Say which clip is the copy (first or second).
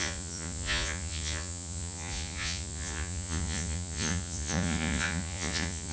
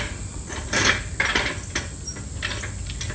first